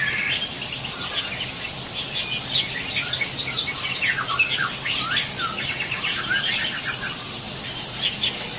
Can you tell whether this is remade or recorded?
recorded